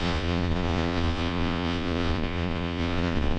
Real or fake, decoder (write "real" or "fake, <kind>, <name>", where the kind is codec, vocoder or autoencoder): fake, vocoder, Vocos